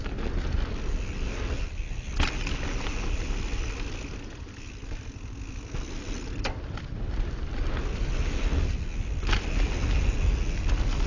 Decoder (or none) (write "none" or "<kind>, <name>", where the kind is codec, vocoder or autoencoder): none